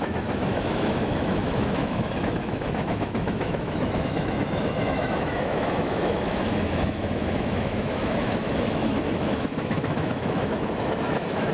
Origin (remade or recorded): remade